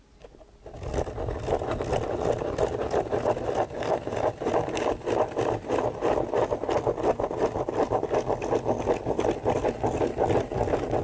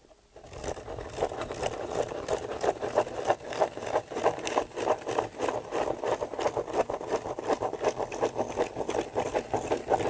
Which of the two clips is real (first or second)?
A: first